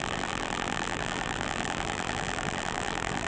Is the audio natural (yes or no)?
no